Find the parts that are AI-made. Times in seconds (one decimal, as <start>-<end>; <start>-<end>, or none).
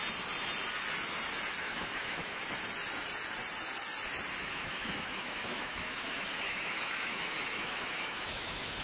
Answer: 1.6-2.4; 4.4-8.8